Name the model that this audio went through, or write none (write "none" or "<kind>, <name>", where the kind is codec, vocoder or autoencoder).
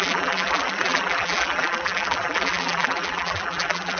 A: vocoder, BigVGAN v2